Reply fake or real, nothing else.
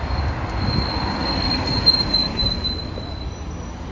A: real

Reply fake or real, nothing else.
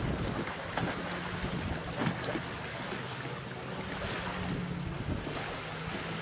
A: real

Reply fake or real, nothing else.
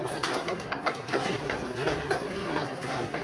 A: fake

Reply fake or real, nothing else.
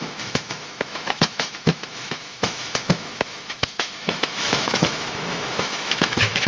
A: fake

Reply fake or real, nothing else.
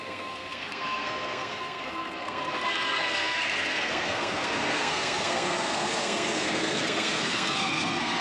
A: fake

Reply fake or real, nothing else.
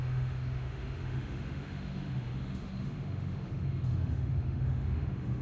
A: fake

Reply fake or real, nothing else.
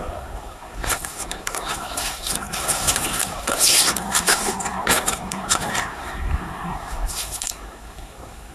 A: fake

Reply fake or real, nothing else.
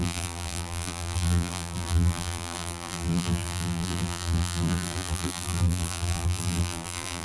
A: fake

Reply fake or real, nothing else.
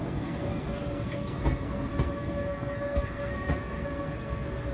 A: fake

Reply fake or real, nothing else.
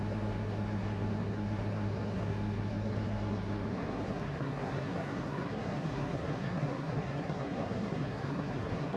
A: fake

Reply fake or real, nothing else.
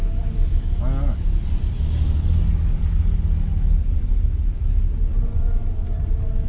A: real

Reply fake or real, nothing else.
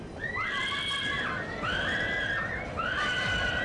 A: real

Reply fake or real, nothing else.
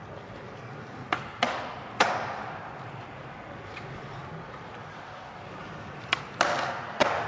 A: real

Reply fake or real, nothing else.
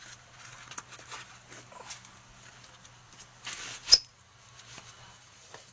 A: real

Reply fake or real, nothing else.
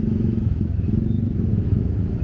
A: fake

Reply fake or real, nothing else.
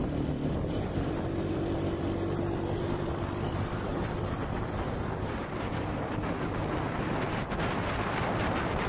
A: fake